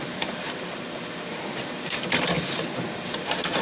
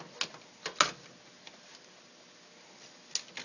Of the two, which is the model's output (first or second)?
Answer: first